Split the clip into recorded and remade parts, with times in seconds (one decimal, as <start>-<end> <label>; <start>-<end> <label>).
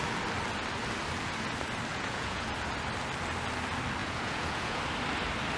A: 0.0-1.9 recorded; 1.9-2.5 remade; 2.5-4.0 recorded; 4.0-4.8 remade; 4.8-5.6 recorded